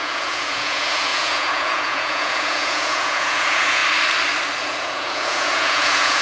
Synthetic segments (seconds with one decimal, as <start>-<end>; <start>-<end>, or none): 0.0-3.8; 4.6-6.2